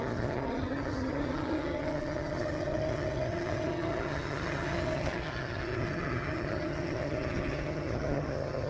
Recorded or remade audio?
remade